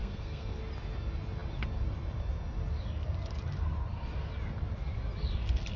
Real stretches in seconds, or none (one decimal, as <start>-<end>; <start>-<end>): 0.6-5.8

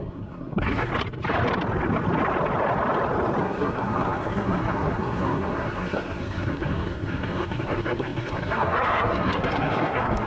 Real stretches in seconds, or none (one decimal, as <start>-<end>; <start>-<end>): 0.9-3.4